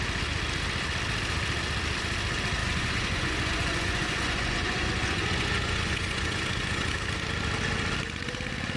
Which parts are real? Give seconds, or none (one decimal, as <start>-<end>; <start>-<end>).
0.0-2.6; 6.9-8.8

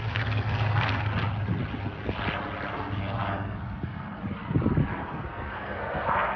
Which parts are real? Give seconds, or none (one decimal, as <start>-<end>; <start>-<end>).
1.1-2.7; 4.2-5.0

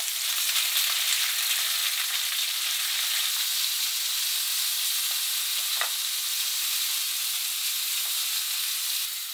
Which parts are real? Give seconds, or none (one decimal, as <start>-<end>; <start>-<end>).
0.0-9.3

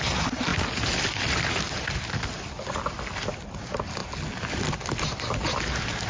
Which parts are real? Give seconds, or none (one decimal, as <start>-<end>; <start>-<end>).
0.0-6.1

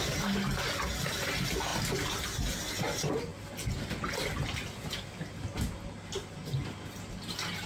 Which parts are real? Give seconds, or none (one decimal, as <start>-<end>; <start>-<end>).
0.0-7.7

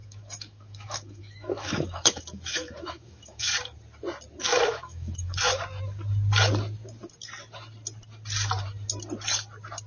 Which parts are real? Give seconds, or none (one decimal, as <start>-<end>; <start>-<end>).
3.5-4.4; 5.5-9.9

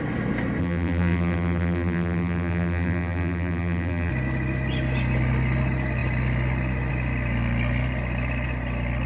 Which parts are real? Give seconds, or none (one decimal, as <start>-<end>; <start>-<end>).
0.0-0.6; 4.1-9.1

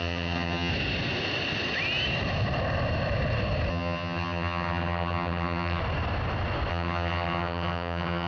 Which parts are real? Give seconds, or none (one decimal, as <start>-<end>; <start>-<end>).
0.7-3.7; 5.8-6.7